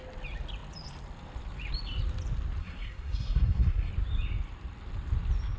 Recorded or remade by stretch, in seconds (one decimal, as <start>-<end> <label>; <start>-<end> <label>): 0.0-2.6 recorded; 2.6-3.9 remade; 3.9-5.6 recorded